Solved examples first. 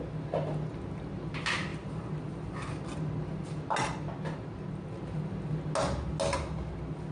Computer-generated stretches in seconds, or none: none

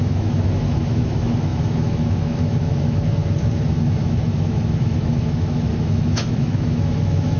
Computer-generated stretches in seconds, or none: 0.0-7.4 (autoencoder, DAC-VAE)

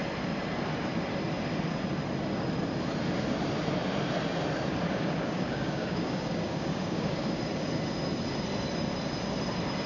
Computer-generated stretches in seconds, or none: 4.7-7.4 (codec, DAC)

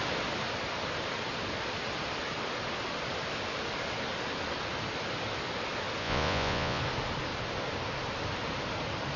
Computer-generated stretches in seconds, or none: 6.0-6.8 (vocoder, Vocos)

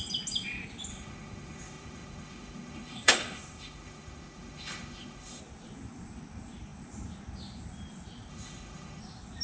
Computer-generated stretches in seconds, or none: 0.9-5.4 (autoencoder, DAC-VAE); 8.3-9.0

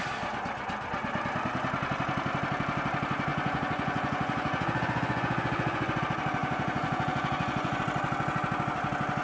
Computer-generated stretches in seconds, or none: 3.3-6.0 (vocoder, Vocos); 6.4-7.8